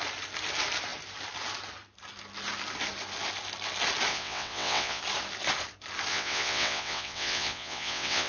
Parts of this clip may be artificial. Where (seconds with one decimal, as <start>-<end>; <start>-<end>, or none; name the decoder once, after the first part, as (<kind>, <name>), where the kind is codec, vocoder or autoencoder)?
4.1-5.0 (vocoder, WaveNeXt); 6.1-8.3